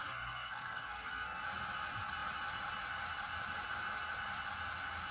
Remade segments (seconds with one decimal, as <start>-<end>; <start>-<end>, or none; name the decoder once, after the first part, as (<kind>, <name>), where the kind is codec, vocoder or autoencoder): 0.0-1.4 (codec, SNAC)